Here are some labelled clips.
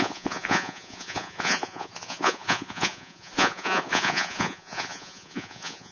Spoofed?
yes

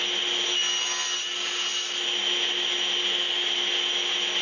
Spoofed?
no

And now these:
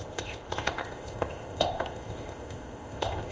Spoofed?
yes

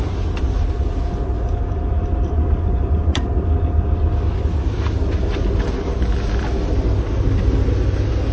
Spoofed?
no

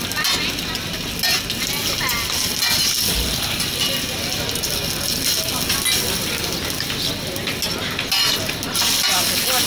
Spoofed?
no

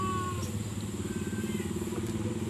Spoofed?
no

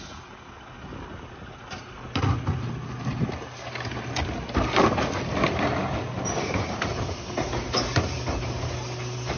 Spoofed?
no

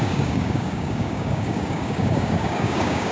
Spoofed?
yes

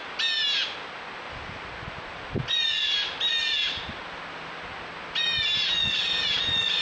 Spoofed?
no